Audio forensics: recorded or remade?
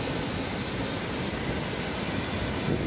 recorded